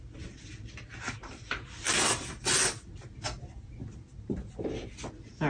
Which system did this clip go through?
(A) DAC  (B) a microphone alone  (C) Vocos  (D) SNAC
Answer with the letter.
B